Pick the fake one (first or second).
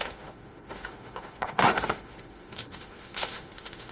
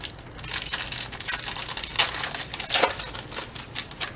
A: first